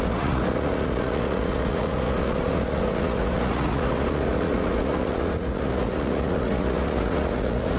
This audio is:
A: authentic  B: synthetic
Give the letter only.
B